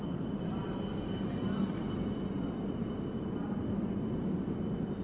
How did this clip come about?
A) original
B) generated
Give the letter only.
A